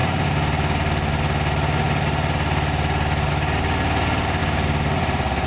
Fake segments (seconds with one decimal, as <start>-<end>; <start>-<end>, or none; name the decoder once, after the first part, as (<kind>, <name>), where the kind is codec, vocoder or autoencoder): none